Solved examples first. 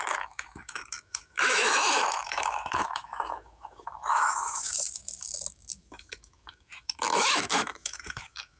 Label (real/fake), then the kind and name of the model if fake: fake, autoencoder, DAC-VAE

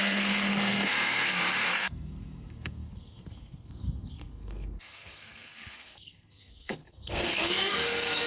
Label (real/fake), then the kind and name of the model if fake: fake, codec, SNAC